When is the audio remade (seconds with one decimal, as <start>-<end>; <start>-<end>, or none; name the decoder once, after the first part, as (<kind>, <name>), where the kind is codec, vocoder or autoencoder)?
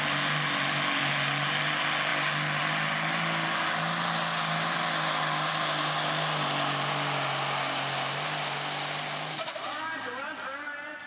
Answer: none